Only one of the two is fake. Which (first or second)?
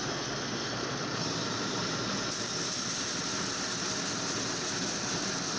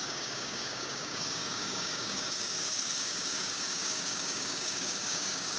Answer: second